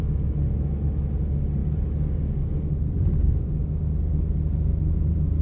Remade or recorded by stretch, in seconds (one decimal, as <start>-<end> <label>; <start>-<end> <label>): 0.0-5.4 recorded